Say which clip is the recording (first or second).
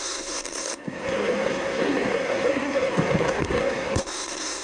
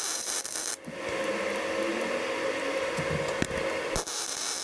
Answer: second